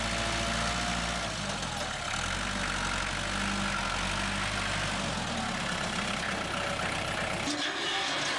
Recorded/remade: recorded